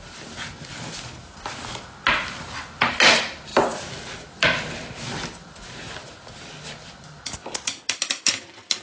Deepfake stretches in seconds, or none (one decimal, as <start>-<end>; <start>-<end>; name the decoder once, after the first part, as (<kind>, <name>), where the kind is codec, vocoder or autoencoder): none